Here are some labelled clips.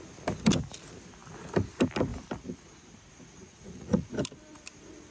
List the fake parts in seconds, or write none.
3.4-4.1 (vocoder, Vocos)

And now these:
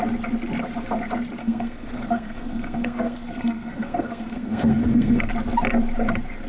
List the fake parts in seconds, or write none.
1.4-5.3 (codec, SNAC)

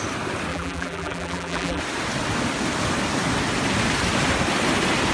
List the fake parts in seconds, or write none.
0.5-1.8 (vocoder, BigVGAN v2)